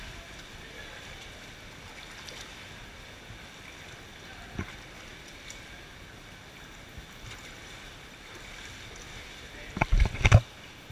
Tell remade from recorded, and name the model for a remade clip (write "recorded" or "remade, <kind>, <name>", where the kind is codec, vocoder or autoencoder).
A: recorded